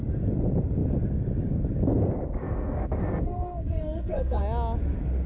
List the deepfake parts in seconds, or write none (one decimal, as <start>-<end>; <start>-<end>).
2.4-4.4